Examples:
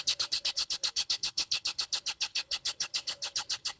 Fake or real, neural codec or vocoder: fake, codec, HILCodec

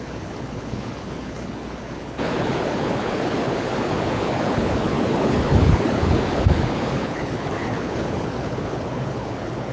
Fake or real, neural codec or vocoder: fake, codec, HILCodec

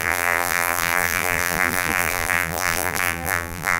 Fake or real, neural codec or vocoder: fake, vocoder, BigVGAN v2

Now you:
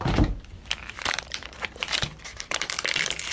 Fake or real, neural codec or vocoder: fake, vocoder, BigVGAN v2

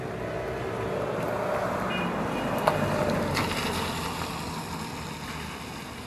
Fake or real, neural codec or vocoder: real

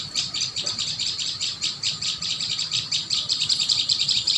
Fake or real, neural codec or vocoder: fake, vocoder, BigVGAN v2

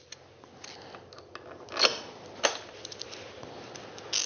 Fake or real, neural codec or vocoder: real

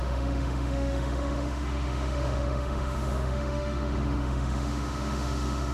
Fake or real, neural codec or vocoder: fake, autoencoder, DAC-VAE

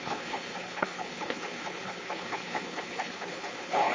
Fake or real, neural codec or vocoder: fake, codec, HILCodec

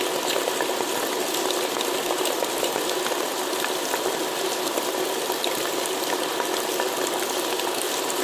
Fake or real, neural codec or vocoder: real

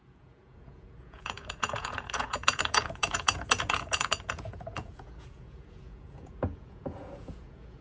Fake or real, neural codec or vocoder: fake, vocoder, Vocos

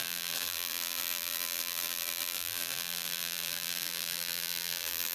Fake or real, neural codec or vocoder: fake, vocoder, BigVGAN v2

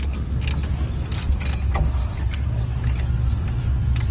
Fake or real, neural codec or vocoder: real